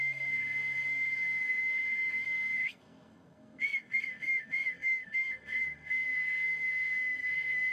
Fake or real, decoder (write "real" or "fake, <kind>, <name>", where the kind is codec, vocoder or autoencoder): fake, codec, SNAC